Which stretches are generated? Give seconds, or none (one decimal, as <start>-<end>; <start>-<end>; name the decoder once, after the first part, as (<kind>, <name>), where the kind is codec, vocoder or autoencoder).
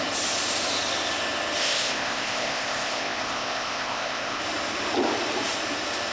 1.6-4.4 (codec, ZipCodec)